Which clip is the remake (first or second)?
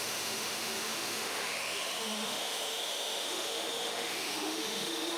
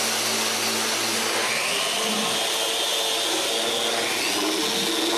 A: first